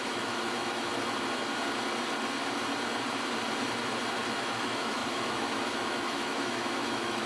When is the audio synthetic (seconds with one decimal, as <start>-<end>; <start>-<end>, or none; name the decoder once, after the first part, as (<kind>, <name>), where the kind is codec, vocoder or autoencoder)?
0.0-0.9 (autoencoder, DAC-VAE); 4.4-7.3